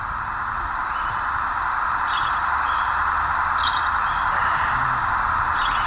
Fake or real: real